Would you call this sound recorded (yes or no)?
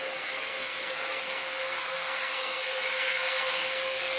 no